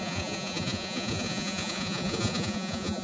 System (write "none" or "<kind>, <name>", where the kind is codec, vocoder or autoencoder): vocoder, Vocos